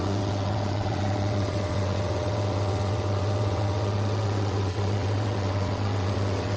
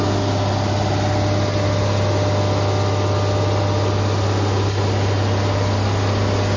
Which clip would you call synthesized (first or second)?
first